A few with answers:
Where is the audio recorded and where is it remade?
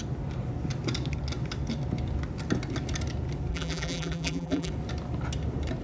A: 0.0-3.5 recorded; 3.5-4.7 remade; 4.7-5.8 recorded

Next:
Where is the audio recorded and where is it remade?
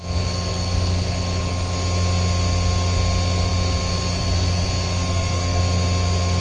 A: 0.0-5.1 recorded; 5.1-5.6 remade; 5.6-6.4 recorded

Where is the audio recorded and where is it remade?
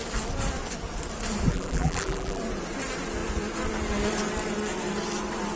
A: 0.0-1.5 recorded; 1.5-2.4 remade; 2.4-5.6 recorded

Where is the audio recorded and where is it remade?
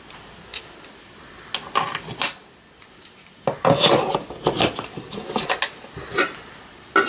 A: 0.0-7.1 recorded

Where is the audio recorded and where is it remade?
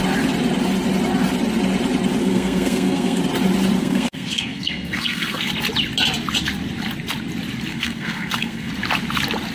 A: 0.0-2.2 recorded; 2.2-3.2 remade; 3.2-3.8 recorded; 3.8-5.5 remade; 5.5-7.7 recorded; 7.7-8.7 remade; 8.7-9.5 recorded